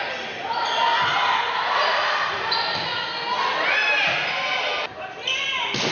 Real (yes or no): yes